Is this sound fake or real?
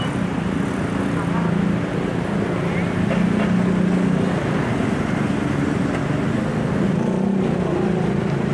real